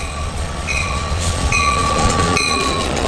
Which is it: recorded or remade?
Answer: remade